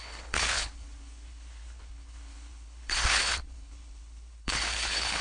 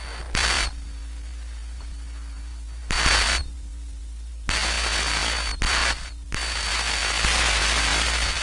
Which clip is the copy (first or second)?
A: first